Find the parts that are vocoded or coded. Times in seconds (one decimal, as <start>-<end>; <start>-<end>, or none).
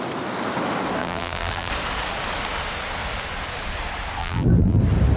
1.0-1.7; 4.2-4.8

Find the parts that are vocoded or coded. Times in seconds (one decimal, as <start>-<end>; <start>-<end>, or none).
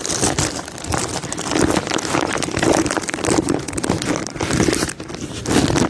none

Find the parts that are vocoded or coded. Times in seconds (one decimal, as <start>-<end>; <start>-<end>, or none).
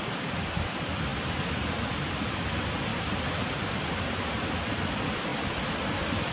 1.1-2.5; 2.9-3.6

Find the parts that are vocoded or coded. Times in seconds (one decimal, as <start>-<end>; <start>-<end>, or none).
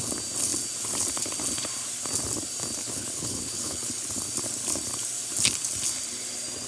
2.8-4.1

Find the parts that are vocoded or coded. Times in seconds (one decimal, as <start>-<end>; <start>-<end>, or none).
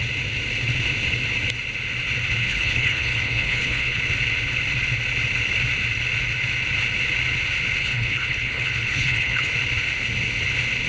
2.4-4.0; 7.8-9.5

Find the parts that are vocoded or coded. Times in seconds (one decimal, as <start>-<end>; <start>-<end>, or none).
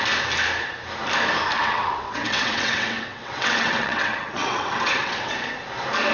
1.6-5.3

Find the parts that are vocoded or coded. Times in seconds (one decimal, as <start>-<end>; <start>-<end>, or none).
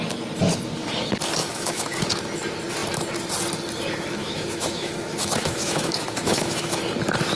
1.4-2.0; 4.2-6.8